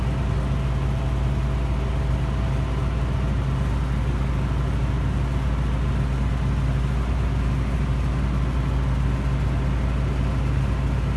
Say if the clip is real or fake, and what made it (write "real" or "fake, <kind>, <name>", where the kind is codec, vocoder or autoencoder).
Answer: real